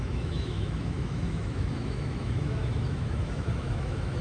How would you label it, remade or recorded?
remade